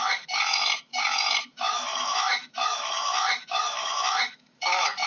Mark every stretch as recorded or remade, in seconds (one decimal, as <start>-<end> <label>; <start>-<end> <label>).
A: 0.0-5.1 remade